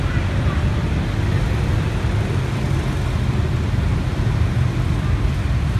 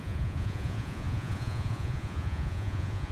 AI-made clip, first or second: second